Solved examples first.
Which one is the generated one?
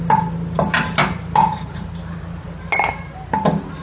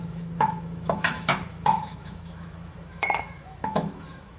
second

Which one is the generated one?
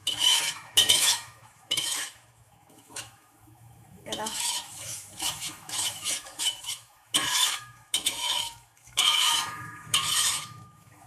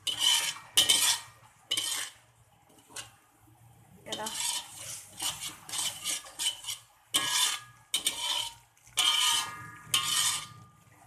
first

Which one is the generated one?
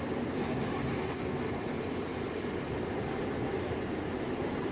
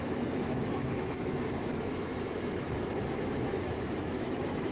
second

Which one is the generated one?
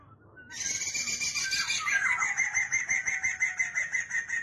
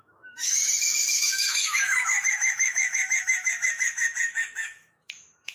second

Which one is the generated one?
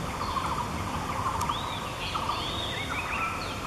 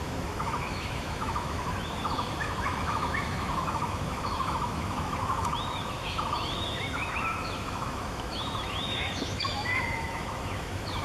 second